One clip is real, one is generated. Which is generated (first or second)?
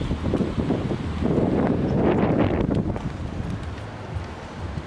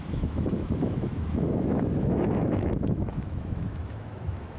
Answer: second